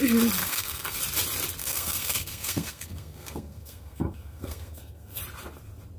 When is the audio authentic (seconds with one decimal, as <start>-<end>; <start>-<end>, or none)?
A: 0.0-0.4; 1.0-1.6; 5.2-6.0